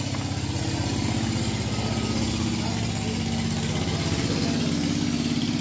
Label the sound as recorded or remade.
recorded